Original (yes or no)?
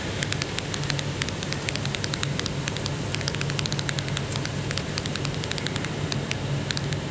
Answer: yes